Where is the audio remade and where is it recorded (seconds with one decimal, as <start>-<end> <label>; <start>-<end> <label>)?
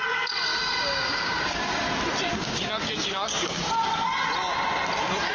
0.0-0.5 recorded; 0.5-1.8 remade; 1.8-2.3 recorded; 2.3-3.7 remade; 3.7-5.3 recorded